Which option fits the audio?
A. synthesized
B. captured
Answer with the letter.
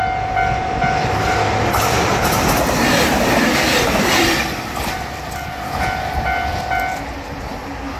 B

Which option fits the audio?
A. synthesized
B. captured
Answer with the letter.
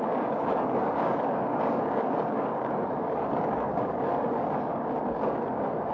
A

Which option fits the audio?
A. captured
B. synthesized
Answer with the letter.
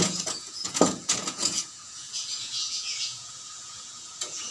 B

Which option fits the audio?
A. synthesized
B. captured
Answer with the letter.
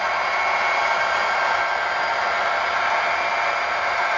B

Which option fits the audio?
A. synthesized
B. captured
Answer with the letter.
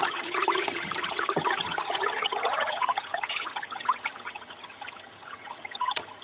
A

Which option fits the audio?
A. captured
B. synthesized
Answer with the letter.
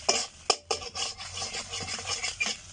A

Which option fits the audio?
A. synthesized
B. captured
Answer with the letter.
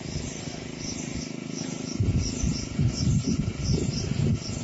B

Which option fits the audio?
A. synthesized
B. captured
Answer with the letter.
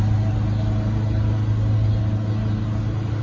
B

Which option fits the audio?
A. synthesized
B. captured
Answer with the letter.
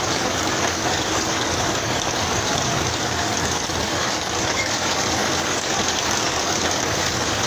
A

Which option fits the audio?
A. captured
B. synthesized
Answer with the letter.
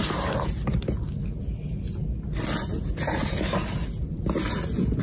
A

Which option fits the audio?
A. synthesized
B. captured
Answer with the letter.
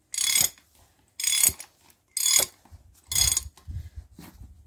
B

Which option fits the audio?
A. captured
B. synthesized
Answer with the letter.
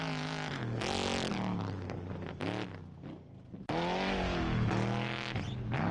A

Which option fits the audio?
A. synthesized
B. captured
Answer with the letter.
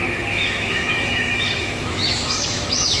A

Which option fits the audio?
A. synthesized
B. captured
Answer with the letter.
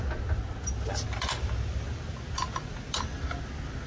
B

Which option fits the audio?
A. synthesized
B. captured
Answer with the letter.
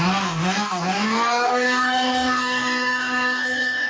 A